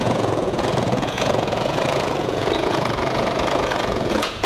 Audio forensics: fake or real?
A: fake